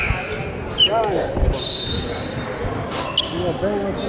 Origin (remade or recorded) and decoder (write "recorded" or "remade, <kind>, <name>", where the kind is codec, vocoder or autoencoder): recorded